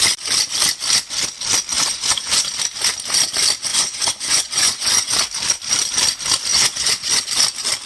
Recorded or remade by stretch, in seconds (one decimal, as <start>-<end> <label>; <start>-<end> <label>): 0.0-1.7 recorded; 1.7-2.4 remade; 2.4-3.7 recorded; 3.7-5.1 remade; 5.1-6.5 recorded; 6.5-7.2 remade; 7.2-7.9 recorded